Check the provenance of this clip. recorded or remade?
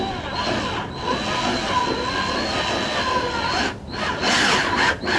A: recorded